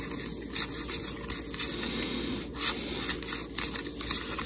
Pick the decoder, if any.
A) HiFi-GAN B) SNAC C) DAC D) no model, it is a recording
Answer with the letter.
D